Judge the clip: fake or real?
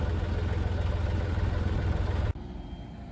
real